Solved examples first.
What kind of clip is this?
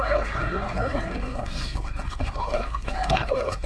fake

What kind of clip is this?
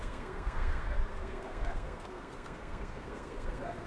fake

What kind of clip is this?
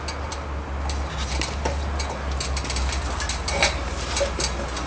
real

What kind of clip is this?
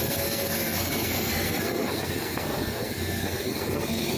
fake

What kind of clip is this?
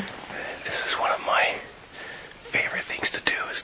real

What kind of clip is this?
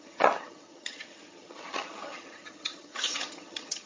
fake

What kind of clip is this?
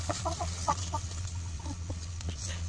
fake